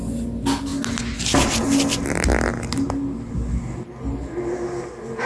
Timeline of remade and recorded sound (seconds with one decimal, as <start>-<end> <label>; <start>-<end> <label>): 0.0-5.3 recorded